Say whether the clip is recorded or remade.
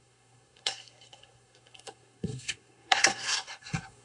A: remade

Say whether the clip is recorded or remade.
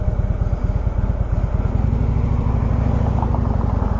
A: recorded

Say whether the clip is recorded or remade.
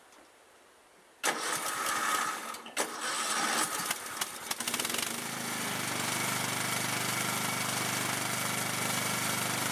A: recorded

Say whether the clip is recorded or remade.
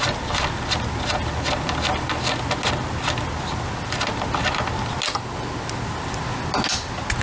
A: recorded